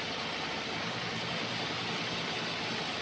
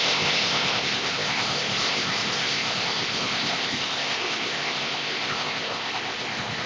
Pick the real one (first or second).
first